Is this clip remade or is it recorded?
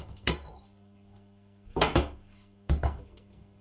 remade